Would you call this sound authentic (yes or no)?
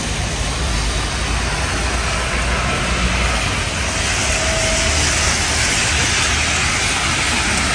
yes